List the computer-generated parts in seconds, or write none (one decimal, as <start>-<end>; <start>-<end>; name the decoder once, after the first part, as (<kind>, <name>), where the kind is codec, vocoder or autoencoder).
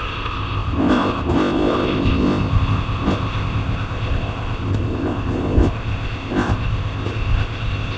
0.0-8.0 (codec, ZipCodec)